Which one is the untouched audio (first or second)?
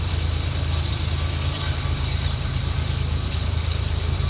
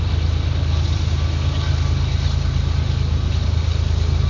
second